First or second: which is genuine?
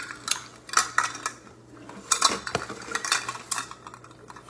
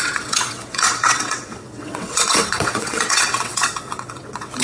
first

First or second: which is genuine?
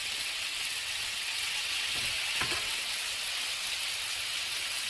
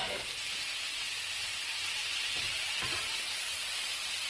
second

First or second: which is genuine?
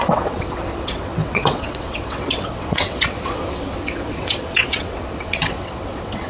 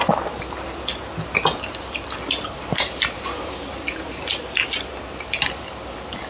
second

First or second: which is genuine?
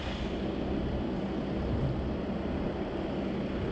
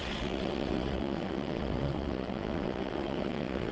first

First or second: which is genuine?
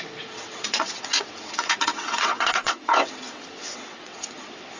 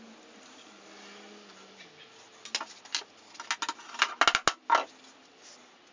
second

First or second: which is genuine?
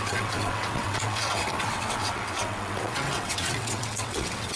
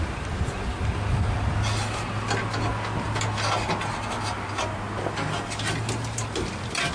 second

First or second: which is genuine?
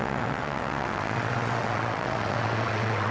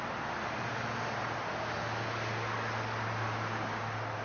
second